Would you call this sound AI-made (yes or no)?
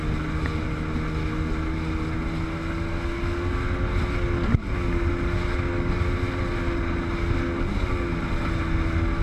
no